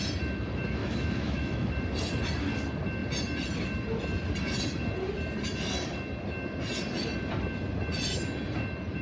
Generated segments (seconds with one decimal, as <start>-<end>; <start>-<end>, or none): 0.8-1.7